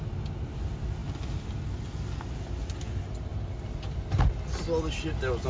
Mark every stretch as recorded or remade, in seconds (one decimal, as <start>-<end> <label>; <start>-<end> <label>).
0.0-5.5 recorded